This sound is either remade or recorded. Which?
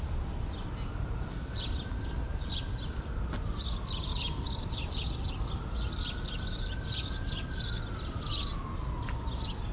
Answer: recorded